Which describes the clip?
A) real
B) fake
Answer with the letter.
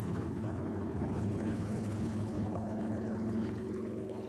B